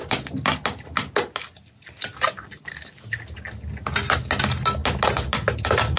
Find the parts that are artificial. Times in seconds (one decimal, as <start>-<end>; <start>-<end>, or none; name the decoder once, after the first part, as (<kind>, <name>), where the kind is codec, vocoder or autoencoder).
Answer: none